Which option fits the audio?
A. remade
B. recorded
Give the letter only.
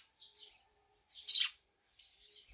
A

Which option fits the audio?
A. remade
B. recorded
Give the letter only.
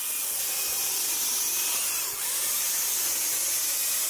B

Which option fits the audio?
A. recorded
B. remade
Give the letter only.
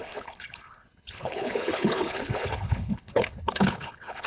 B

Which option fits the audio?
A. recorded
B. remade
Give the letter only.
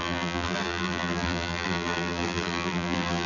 B